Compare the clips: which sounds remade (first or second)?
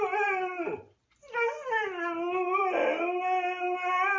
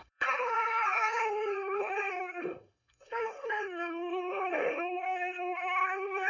second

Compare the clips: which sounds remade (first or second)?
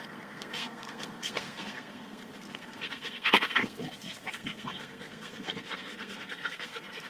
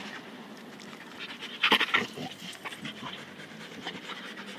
first